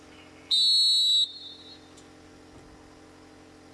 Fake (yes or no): no